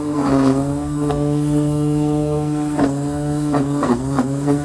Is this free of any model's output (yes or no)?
no